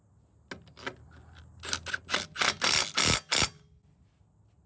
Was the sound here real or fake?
real